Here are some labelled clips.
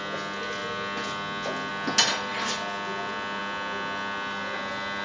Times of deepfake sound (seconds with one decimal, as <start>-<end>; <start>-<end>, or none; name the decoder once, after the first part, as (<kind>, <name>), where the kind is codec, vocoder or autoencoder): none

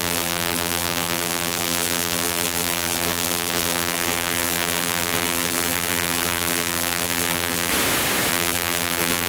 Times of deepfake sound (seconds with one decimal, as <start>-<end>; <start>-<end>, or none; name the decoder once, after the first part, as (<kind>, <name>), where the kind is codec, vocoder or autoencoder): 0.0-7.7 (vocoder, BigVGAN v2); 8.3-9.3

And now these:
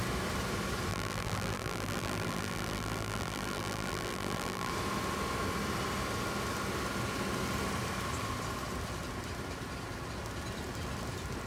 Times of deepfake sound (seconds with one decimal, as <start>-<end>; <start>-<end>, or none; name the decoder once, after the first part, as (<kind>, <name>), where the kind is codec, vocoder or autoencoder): 0.9-4.7 (vocoder, BigVGAN v2)

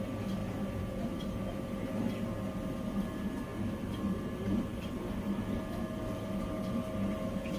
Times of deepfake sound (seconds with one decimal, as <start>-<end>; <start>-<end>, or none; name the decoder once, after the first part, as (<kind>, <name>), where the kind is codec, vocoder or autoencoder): 0.4-1.2 (vocoder, BigVGAN v2)

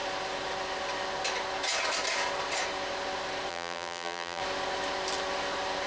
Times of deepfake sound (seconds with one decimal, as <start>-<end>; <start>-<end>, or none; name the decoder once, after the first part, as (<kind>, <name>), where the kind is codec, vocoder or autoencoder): 3.5-4.4 (vocoder, BigVGAN v2)